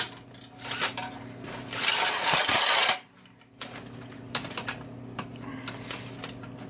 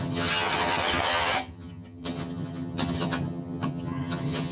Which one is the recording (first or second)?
first